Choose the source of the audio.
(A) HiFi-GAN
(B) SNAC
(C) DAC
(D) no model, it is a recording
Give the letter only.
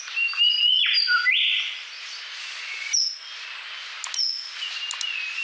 D